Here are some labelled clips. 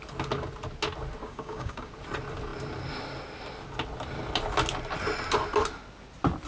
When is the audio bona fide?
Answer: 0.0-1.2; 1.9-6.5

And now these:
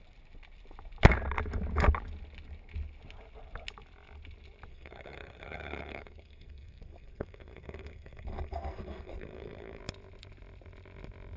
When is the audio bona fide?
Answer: 0.0-4.7; 9.8-11.4

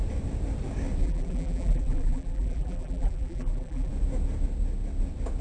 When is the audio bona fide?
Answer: 0.0-1.0; 3.9-5.4

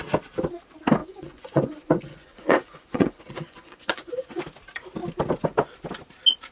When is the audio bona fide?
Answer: 0.0-1.0; 4.4-6.5

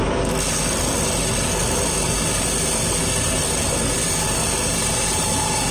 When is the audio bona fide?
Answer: 0.0-5.7

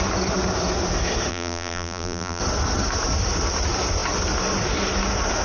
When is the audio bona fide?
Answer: 0.0-1.3; 2.4-5.4

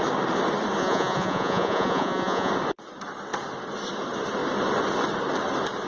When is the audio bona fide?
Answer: 0.0-0.8; 2.5-5.9

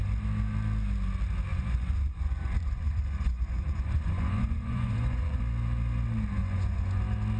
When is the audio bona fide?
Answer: 0.0-1.5; 5.4-6.4; 7.0-7.4